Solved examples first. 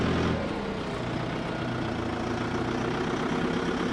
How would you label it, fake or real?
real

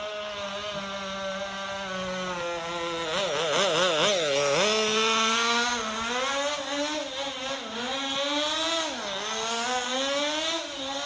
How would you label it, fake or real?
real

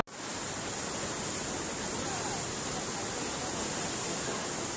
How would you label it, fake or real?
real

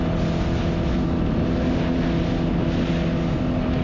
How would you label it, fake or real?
real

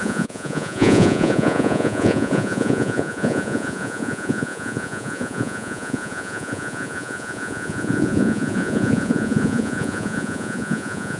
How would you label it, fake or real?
fake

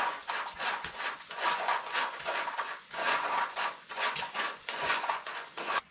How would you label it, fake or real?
fake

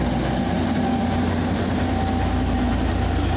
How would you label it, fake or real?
real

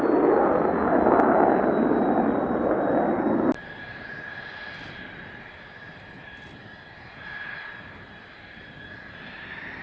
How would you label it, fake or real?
real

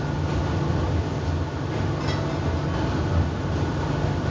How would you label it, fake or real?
real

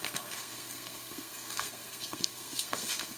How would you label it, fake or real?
fake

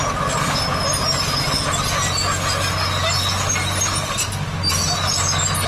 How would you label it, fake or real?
real